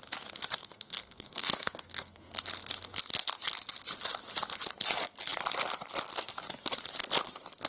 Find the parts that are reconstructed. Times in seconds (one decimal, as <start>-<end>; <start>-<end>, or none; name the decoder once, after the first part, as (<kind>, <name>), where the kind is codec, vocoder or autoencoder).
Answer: 0.6-2.3 (codec, SNAC)